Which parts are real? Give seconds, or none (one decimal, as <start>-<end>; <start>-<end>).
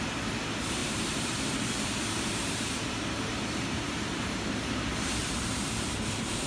0.0-0.8; 4.7-5.2